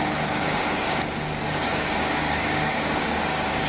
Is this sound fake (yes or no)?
yes